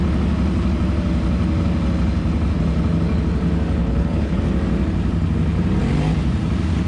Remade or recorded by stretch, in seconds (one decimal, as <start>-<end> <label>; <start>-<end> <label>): 0.0-3.8 recorded; 3.8-4.4 remade; 4.4-6.9 recorded